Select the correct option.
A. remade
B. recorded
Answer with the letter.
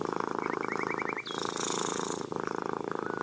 B